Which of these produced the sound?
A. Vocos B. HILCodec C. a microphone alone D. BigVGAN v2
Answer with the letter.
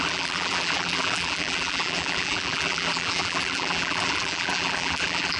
D